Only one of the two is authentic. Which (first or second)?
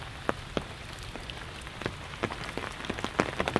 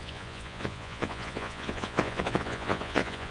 first